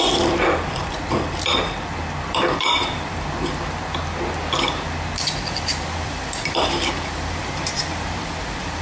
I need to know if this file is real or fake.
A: fake